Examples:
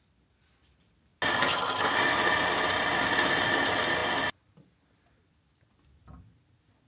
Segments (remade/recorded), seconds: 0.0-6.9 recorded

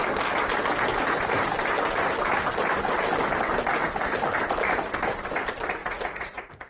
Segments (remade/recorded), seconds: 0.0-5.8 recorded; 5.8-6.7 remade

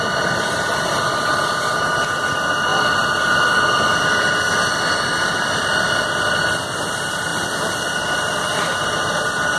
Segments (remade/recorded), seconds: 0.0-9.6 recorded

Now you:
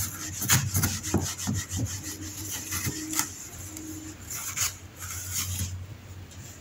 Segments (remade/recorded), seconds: 0.0-2.3 recorded; 2.3-3.5 remade; 3.5-6.6 recorded